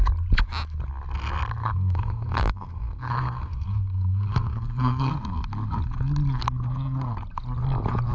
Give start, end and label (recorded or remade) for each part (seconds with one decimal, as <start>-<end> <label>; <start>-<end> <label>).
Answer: 0.0-1.6 recorded; 1.6-5.1 remade; 5.1-8.1 recorded